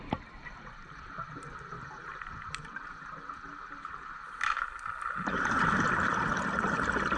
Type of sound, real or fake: real